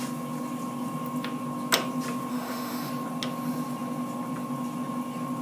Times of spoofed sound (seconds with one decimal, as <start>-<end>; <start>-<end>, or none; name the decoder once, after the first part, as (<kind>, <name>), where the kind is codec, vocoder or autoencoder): 2.3-2.9 (autoencoder, DAC-VAE)